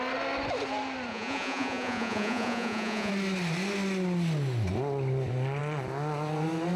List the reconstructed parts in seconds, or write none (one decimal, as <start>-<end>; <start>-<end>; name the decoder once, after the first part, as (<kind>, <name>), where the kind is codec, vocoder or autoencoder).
1.1-3.1 (vocoder, Vocos)